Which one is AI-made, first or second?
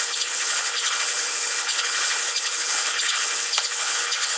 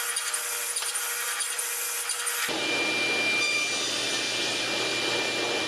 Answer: first